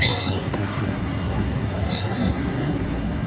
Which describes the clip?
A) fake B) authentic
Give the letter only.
A